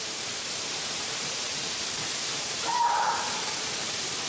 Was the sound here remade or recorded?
remade